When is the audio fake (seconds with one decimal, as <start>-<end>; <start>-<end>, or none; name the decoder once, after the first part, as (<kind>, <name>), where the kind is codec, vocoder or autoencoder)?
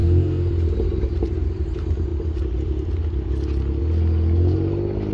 0.0-0.5 (codec, SNAC)